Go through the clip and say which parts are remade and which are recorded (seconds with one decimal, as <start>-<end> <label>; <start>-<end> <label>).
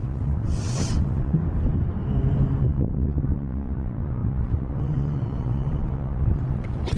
0.0-1.4 remade; 1.4-2.6 recorded; 2.6-7.0 remade